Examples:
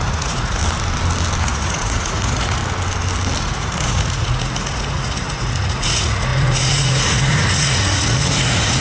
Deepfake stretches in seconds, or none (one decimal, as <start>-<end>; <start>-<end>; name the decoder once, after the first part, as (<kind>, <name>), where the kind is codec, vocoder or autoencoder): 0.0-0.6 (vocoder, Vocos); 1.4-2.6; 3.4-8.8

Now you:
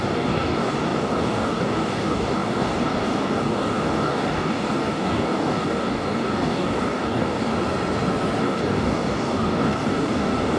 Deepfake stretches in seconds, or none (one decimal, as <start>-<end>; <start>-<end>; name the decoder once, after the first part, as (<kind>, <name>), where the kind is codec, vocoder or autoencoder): 0.0-7.5 (codec, DAC); 8.4-10.6

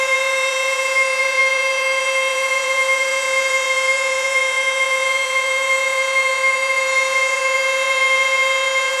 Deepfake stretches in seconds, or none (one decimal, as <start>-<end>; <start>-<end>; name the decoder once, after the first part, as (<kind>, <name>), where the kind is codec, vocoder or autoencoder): 0.0-9.0 (vocoder, Vocos)